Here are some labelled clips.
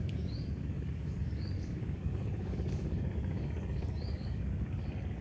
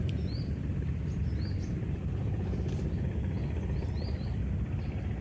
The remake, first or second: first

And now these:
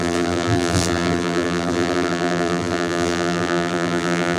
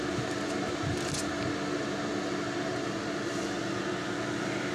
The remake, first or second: first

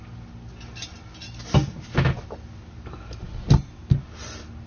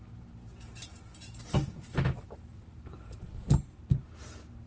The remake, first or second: second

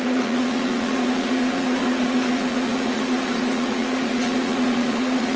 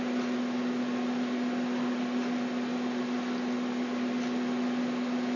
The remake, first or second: first